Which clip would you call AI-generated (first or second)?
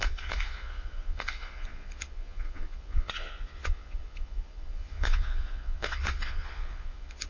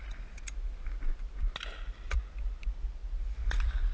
first